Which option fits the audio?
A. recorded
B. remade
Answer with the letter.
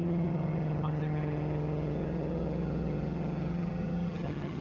B